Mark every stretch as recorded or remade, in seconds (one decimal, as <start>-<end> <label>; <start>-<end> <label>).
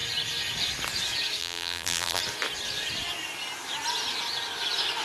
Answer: 0.0-1.4 recorded; 1.4-2.2 remade; 2.2-5.0 recorded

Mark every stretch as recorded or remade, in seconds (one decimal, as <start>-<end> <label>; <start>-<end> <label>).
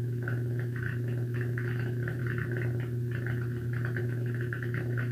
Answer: 0.0-2.2 remade; 2.2-4.0 recorded; 4.0-5.1 remade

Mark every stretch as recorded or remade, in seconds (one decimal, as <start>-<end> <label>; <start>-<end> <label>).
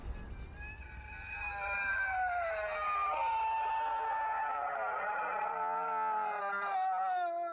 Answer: 0.0-7.5 recorded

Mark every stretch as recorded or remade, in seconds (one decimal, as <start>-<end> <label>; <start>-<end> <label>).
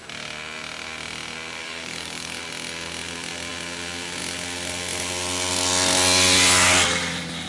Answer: 0.0-1.6 recorded; 1.6-2.4 remade; 2.4-7.5 recorded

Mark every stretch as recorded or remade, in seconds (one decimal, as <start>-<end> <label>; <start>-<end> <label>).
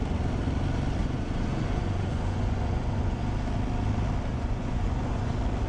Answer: 0.0-1.0 recorded; 1.0-3.2 remade; 3.2-4.3 recorded; 4.3-5.3 remade; 5.3-5.7 recorded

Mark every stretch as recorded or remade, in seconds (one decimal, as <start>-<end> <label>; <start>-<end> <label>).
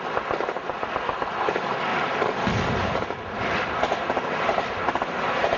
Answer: 0.0-1.9 recorded; 1.9-3.6 remade; 3.6-5.6 recorded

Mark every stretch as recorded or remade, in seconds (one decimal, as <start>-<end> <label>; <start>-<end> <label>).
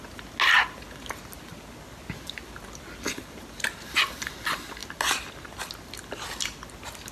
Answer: 0.0-7.1 recorded